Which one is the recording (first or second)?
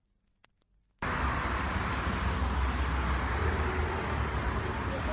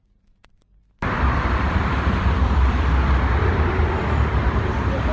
first